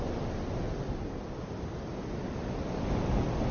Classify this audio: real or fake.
real